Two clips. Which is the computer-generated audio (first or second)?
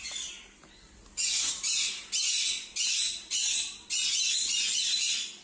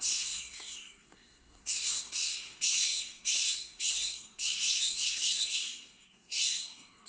second